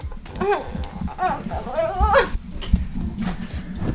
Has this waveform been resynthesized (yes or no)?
no